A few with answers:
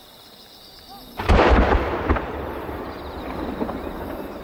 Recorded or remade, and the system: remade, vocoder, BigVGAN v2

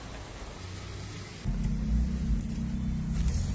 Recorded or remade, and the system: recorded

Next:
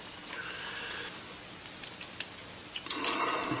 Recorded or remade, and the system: recorded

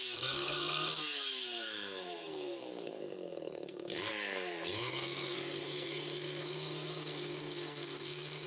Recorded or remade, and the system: remade, codec, SNAC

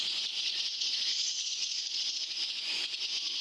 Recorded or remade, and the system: remade, vocoder, Vocos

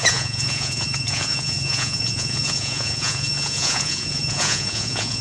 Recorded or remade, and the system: remade, vocoder, Vocos